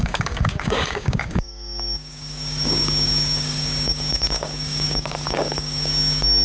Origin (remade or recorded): remade